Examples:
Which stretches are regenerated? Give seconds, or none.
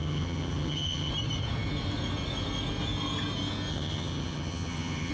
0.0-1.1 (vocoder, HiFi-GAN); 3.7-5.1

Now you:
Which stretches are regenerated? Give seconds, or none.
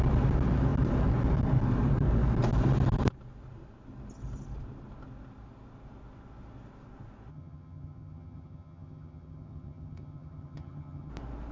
7.3-11.1 (vocoder, HiFi-GAN)